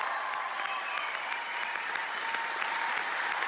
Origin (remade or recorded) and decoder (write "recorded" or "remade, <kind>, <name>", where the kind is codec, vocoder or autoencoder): recorded